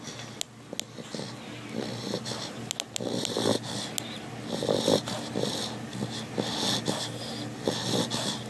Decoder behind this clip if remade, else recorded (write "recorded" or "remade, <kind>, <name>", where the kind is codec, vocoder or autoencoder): recorded